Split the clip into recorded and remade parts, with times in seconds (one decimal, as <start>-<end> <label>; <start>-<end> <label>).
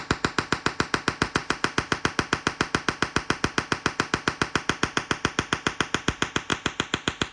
0.0-7.3 recorded